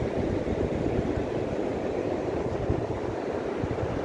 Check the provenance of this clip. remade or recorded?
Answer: recorded